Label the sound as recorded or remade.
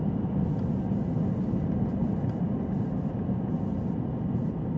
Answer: recorded